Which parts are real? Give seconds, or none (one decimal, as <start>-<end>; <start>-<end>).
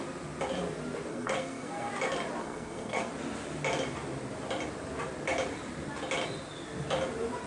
0.0-1.1; 1.9-2.4; 3.1-7.5